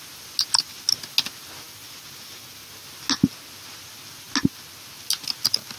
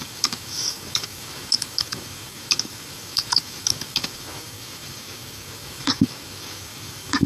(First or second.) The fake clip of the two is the second